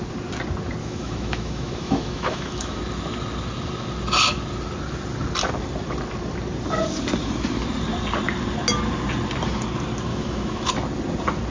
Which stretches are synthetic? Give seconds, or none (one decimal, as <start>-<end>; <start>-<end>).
0.8-2.8; 10.1-10.7